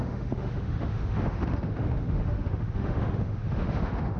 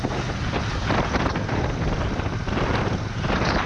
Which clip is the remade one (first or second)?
first